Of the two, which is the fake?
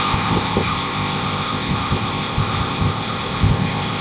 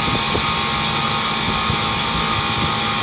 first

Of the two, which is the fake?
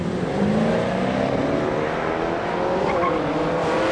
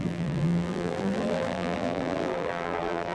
second